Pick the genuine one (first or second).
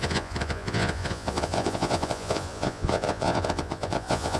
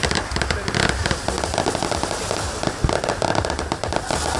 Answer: second